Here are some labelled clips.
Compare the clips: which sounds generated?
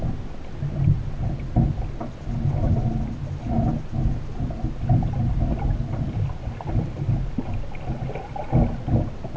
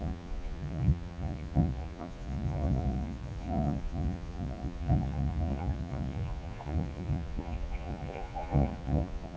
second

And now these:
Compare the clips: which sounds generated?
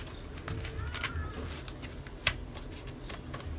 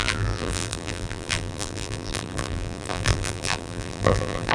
second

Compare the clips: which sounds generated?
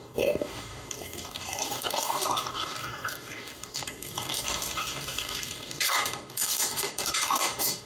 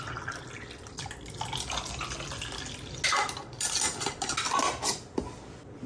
first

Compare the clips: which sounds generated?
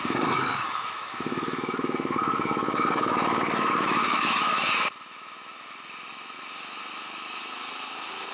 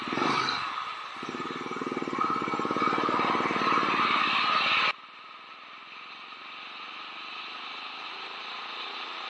first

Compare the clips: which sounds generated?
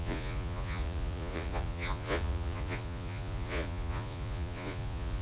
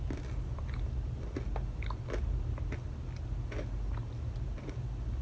first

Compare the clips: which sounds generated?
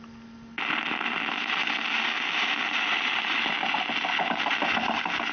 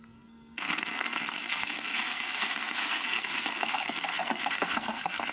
second